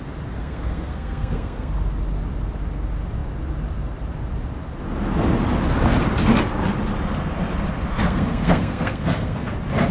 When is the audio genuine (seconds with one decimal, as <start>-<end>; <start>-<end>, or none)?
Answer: 0.0-0.4; 1.7-7.9; 9.5-9.9